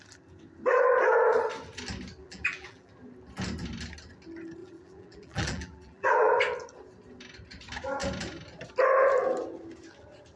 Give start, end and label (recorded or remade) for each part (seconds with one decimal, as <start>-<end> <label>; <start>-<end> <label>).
0.0-2.2 recorded; 2.2-2.9 remade; 2.9-4.6 recorded; 4.6-6.3 remade; 6.3-10.4 recorded